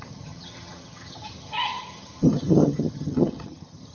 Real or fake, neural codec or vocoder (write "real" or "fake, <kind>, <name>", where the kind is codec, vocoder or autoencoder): fake, vocoder, HiFi-GAN